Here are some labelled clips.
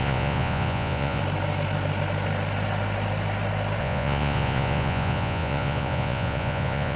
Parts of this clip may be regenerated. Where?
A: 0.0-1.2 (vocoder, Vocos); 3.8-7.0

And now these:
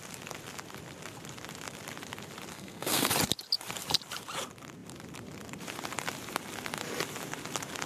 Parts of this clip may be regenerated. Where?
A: 2.5-3.1 (codec, SNAC)

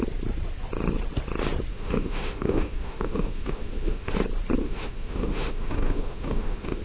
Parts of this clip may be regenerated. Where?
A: 1.7-4.1 (autoencoder, DAC-VAE); 4.6-6.8

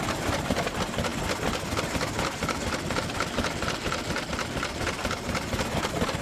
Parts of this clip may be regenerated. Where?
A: none

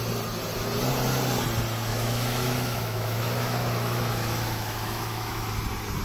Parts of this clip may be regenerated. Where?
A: 1.9-5.5 (autoencoder, DAC-VAE)

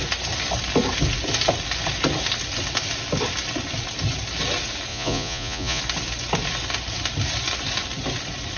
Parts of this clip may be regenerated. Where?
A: 4.9-5.8 (vocoder, Vocos)

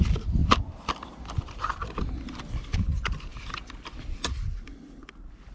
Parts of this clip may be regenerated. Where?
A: 0.4-2.1 (vocoder, BigVGAN v2)